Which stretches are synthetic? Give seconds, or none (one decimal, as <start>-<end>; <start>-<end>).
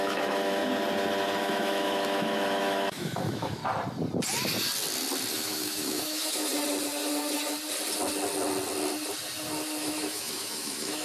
0.0-0.6; 1.4-3.6; 5.3-6.5; 9.8-11.0